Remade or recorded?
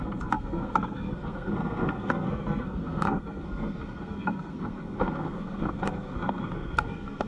remade